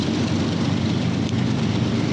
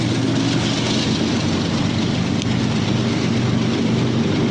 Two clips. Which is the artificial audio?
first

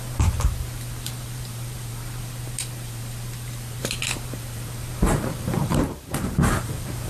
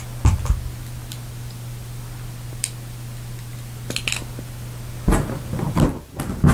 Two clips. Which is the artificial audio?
first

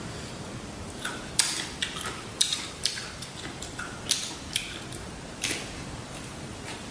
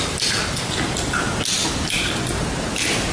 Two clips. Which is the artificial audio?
first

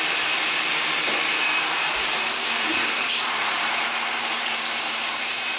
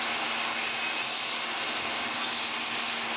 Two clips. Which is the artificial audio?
first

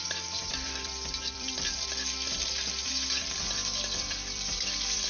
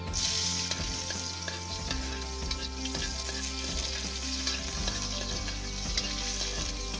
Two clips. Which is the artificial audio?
first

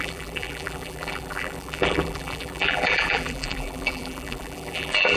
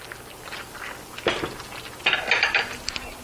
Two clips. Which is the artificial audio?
first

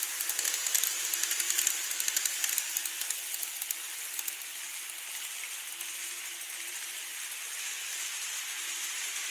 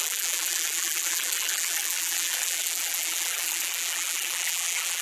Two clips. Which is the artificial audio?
second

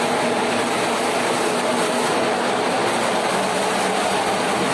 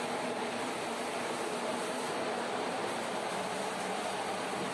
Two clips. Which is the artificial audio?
second